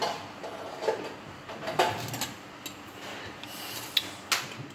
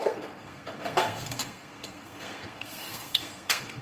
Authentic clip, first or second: first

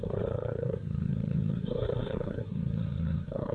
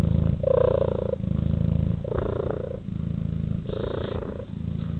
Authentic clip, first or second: second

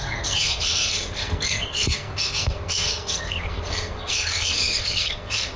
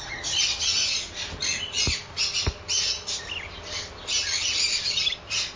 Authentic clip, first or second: second